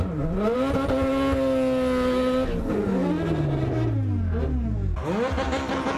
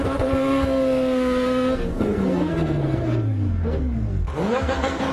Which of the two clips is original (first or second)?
first